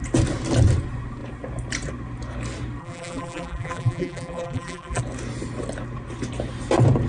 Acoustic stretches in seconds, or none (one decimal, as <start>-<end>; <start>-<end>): 0.0-2.8; 5.0-7.1